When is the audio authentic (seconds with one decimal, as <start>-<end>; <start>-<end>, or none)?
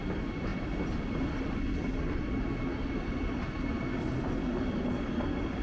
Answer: 0.0-5.6